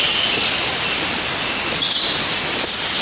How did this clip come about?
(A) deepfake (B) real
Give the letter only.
B